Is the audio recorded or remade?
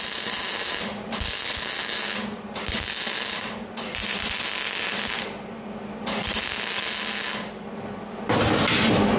recorded